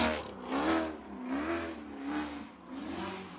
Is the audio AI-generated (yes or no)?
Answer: no